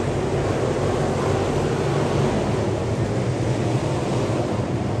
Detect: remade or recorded recorded